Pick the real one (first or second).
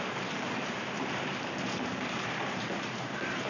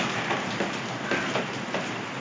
second